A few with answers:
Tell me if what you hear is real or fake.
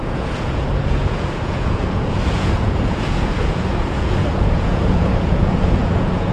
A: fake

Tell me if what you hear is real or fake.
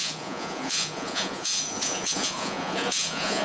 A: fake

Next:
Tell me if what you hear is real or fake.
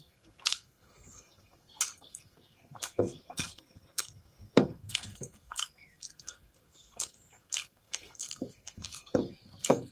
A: fake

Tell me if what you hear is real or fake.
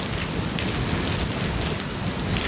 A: real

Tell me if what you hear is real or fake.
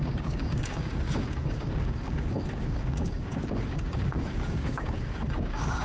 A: fake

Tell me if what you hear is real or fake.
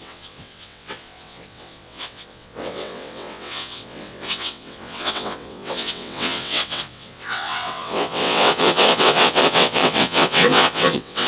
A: fake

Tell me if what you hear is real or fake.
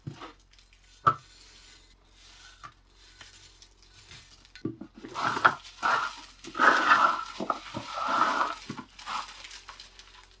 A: real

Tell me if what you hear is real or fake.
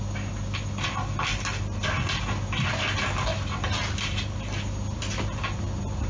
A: real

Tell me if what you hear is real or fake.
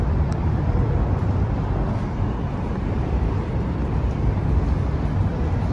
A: real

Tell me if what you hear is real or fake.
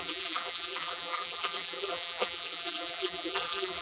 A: fake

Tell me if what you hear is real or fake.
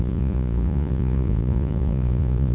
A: fake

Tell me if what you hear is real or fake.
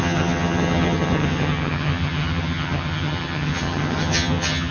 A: fake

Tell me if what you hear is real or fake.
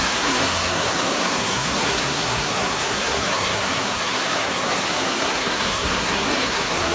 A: fake